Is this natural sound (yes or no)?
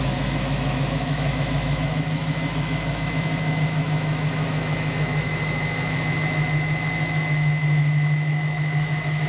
no